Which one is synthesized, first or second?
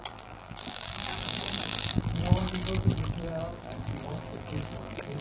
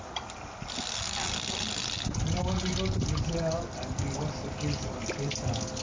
first